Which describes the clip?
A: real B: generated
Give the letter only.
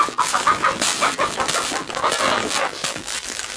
B